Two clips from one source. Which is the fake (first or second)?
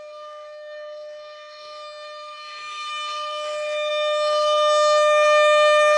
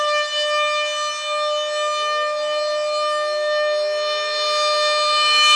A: first